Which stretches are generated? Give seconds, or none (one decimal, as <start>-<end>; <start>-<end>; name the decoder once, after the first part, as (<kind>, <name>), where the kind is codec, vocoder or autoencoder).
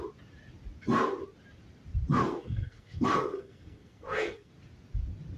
2.2-4.5 (codec, SNAC)